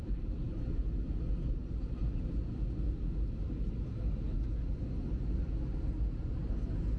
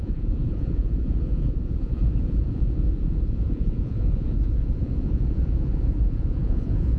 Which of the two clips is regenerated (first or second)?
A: second